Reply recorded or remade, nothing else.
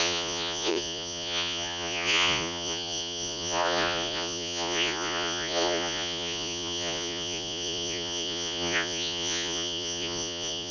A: remade